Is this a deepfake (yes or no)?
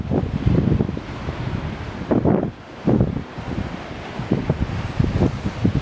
no